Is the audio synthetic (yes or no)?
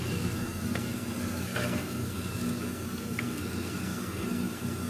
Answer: yes